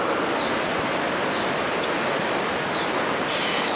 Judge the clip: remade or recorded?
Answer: recorded